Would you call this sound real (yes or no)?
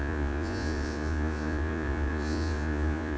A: no